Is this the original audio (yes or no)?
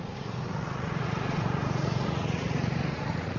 no